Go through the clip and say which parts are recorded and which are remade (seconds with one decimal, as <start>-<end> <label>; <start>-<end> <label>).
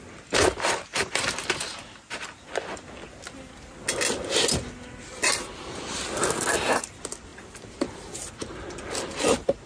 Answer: 0.0-9.7 recorded